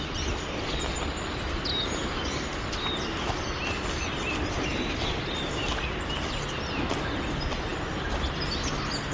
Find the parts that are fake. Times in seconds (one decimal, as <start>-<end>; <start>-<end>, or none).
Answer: none